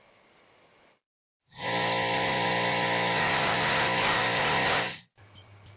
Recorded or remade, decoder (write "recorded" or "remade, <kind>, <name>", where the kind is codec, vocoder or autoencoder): recorded